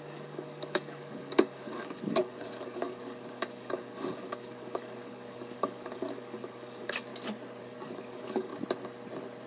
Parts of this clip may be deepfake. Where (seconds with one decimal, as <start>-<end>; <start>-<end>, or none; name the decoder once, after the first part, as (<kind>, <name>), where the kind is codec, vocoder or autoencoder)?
0.0-7.1 (codec, DAC); 7.6-8.5